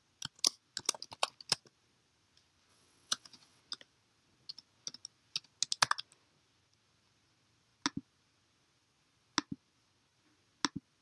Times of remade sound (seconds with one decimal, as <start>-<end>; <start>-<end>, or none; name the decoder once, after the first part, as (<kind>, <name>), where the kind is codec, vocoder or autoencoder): 2.7-3.6 (vocoder, WaveNeXt)